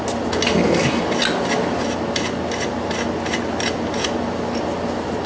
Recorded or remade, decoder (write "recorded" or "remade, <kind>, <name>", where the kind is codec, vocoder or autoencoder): recorded